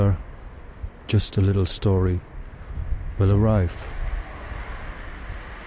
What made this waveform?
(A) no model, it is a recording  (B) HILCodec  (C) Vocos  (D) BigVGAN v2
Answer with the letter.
A